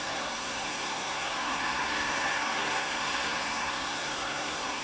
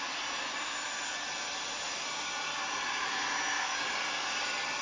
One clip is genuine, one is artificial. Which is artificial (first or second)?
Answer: first